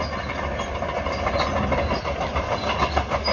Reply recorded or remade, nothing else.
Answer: recorded